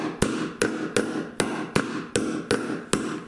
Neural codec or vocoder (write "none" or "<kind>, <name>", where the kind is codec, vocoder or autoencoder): none